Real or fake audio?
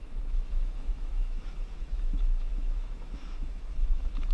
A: fake